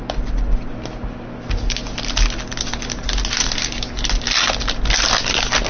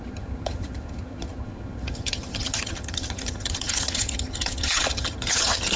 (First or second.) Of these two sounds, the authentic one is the first